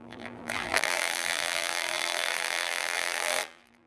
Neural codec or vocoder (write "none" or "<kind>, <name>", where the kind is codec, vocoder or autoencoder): vocoder, BigVGAN v2